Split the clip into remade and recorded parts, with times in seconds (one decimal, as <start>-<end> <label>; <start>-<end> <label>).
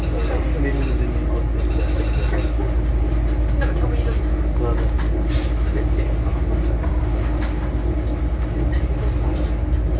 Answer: 0.0-10.0 recorded